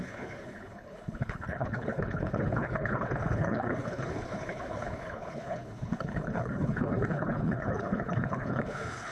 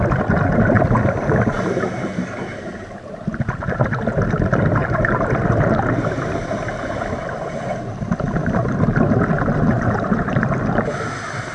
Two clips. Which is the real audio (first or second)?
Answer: second